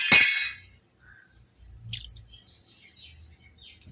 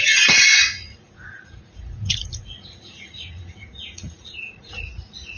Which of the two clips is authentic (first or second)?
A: first